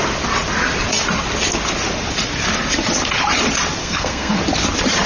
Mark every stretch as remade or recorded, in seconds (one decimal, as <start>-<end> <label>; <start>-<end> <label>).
0.0-3.8 recorded; 3.8-4.4 remade; 4.4-5.1 recorded